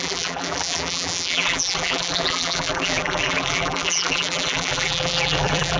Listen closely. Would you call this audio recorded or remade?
remade